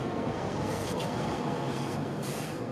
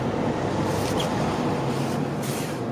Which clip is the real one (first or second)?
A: second